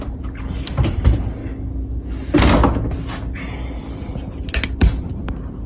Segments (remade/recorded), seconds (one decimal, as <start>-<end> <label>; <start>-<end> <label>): 0.0-1.4 remade; 1.4-4.8 recorded; 4.8-5.7 remade